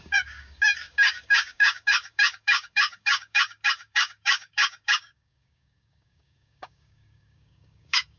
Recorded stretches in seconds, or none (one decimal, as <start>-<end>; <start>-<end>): none